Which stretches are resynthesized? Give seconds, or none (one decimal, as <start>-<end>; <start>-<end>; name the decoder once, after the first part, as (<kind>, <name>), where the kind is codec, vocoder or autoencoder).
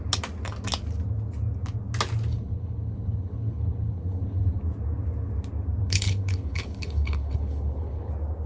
2.3-4.6 (codec, HILCodec); 5.8-8.1